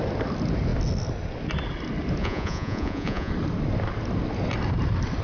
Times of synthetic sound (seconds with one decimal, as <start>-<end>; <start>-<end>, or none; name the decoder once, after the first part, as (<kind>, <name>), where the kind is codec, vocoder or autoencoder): 2.2-3.3 (vocoder, Vocos)